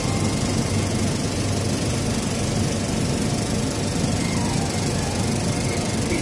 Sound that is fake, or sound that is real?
real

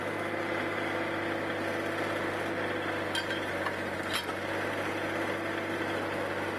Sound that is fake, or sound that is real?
real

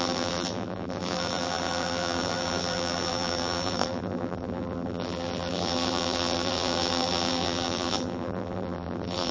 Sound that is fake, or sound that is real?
fake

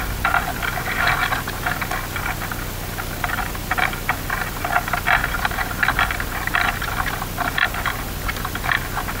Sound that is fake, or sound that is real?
real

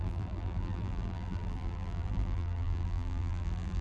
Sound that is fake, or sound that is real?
fake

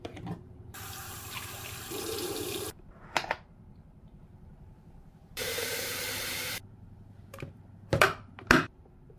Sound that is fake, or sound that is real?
fake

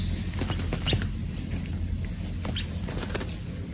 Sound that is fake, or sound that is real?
real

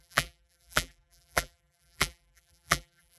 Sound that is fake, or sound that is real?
fake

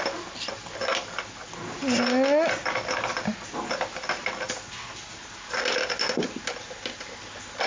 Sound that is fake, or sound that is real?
real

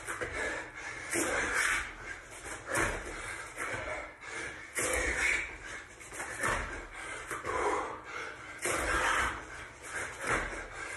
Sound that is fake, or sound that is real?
real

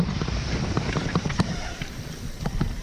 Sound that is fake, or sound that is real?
fake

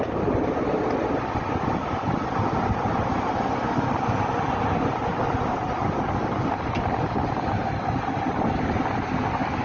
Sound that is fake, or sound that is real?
real